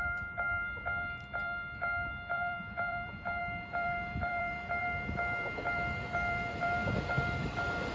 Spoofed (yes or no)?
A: yes